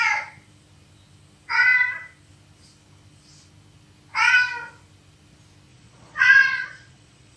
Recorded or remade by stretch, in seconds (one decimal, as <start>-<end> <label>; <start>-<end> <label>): 0.0-5.7 recorded; 5.7-7.4 remade